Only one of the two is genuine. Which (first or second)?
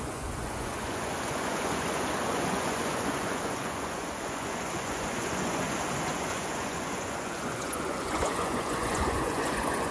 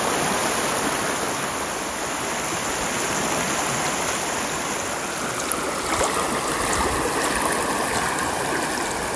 second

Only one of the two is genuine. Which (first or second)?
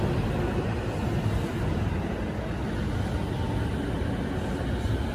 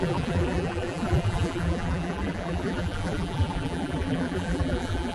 first